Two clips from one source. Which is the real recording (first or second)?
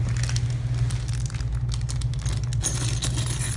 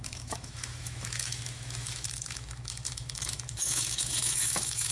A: first